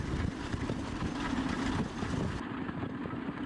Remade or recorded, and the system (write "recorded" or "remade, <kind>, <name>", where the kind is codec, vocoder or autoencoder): recorded